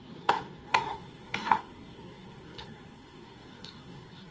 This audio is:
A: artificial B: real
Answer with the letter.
A